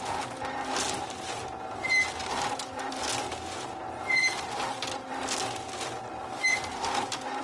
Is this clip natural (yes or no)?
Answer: yes